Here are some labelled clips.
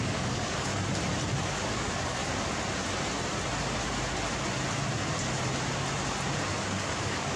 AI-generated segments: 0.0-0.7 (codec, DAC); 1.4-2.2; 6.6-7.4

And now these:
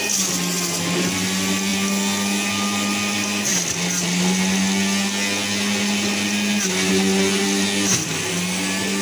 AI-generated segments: none

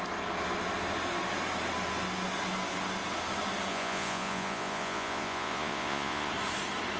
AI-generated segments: 3.7-6.3 (vocoder, Vocos)

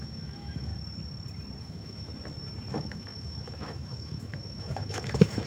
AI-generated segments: 0.0-0.7 (autoencoder, DAC-VAE); 1.6-2.1; 2.7-5.5